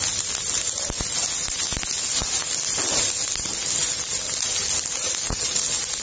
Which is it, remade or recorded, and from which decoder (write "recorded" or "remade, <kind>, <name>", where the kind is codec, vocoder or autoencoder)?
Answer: recorded